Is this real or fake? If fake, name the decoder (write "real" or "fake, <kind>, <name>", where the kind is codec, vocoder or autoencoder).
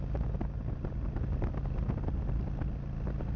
real